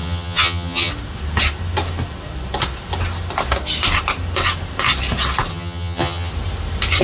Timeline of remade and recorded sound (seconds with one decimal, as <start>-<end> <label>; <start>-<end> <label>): 0.0-0.9 remade; 0.9-5.5 recorded; 5.5-6.3 remade; 6.3-7.0 recorded